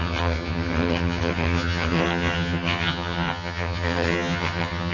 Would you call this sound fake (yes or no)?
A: yes